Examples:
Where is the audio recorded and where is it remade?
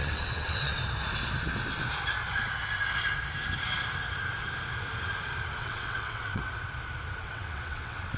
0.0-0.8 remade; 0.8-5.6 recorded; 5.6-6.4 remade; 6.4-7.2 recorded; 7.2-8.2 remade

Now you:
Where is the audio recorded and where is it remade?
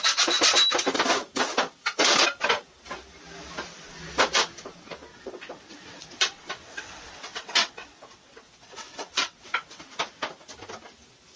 0.0-5.1 recorded; 5.1-9.8 remade; 9.8-11.4 recorded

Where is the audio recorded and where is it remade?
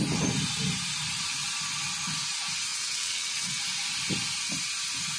0.0-2.7 recorded; 2.7-3.6 remade; 3.6-5.2 recorded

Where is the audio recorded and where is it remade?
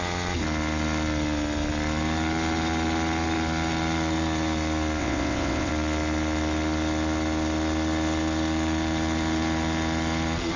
0.0-5.0 recorded; 5.0-5.7 remade; 5.7-10.6 recorded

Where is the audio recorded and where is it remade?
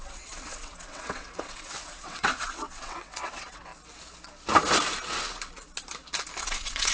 0.0-3.7 remade; 3.7-6.4 recorded; 6.4-6.9 remade